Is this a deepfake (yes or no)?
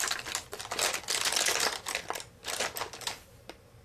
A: no